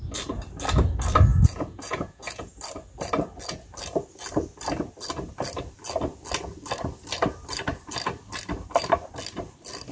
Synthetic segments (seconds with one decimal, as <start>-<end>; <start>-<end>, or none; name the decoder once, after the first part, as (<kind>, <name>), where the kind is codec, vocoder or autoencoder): 1.3-2.6 (vocoder, Vocos)